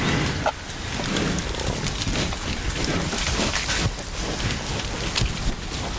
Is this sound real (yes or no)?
yes